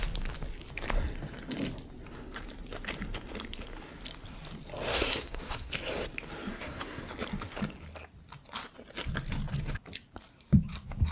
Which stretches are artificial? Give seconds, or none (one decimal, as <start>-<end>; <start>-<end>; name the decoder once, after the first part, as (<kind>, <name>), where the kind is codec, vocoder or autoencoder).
4.9-5.7 (codec, SNAC); 6.5-7.1

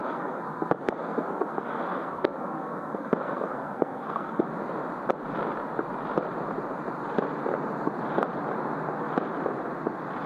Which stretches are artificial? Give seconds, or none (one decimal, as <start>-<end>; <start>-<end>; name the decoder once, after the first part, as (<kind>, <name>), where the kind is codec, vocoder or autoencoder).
0.0-4.5 (codec, SNAC)

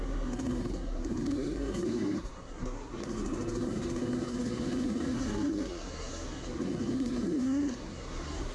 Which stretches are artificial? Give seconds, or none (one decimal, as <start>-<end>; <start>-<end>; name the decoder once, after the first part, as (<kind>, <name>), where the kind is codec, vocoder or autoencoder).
0.0-8.5 (codec, SNAC)

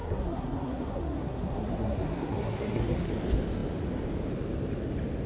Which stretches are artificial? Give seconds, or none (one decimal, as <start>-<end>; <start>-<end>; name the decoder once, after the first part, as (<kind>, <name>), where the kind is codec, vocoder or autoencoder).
0.0-3.1 (codec, SNAC)

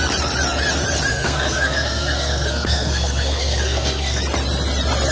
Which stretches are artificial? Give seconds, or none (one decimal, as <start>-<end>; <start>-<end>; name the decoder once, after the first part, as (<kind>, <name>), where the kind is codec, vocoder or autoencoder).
1.1-4.2 (codec, SNAC)

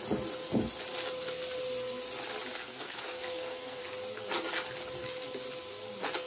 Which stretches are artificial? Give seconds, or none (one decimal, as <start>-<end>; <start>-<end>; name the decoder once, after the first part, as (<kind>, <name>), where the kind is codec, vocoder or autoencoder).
2.7-3.8 (codec, SNAC)